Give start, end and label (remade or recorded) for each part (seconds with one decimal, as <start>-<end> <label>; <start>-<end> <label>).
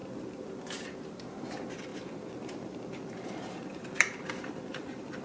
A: 0.0-1.9 recorded; 1.9-5.2 remade